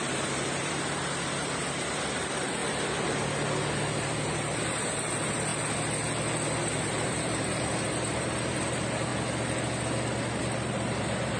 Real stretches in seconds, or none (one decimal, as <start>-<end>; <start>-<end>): 2.6-3.9; 5.5-6.8; 9.1-10.4